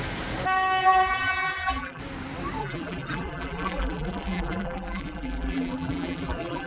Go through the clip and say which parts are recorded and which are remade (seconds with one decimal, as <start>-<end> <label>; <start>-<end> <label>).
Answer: 0.0-0.8 recorded; 0.8-2.0 remade; 2.0-2.6 recorded; 2.6-6.7 remade